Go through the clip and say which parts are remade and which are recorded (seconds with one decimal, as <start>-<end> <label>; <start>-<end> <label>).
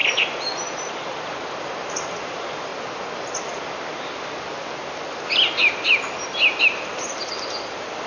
0.0-2.7 remade; 2.7-6.6 recorded; 6.6-8.1 remade